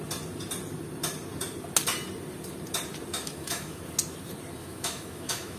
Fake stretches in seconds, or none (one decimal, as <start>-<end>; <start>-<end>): 3.1-3.8; 4.6-5.6